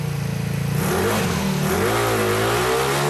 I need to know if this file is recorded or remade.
recorded